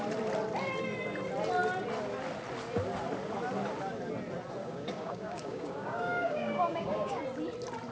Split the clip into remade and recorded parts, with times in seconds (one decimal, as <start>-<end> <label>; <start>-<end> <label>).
0.0-4.6 recorded; 4.6-7.2 remade; 7.2-7.9 recorded